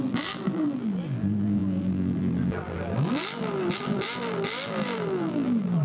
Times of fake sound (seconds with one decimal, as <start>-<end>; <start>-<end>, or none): 0.0-5.8